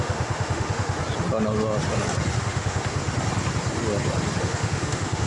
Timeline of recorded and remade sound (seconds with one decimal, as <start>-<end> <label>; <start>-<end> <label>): 0.0-1.0 remade; 1.0-2.4 recorded; 2.4-3.0 remade; 3.0-4.4 recorded; 4.4-5.3 remade